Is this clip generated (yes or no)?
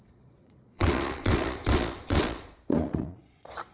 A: yes